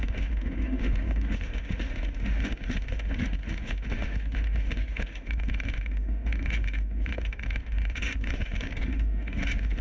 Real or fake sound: fake